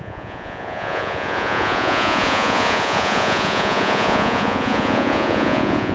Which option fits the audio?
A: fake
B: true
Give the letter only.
A